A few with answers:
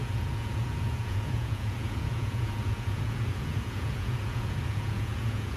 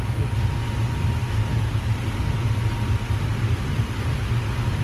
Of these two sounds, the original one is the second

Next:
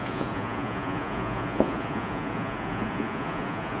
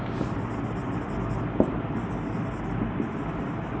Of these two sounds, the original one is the second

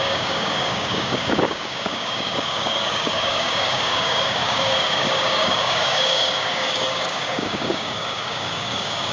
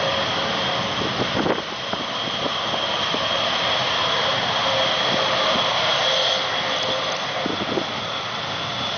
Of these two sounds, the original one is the second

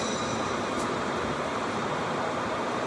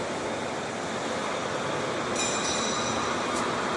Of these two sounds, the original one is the second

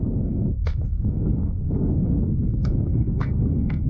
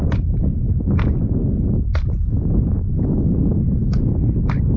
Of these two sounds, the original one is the second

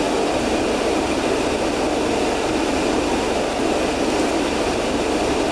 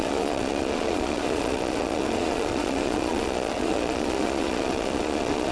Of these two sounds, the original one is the first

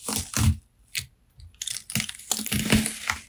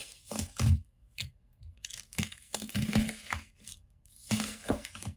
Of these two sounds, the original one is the first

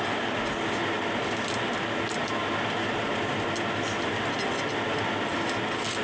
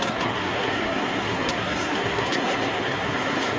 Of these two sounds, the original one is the first